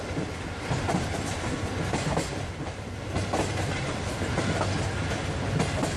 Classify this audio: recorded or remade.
recorded